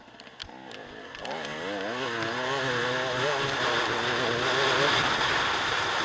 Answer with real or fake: real